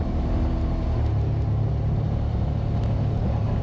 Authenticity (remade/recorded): recorded